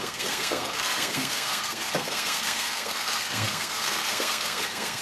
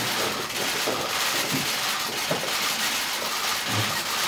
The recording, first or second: second